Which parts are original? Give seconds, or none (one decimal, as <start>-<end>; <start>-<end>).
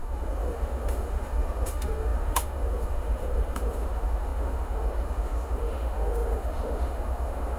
none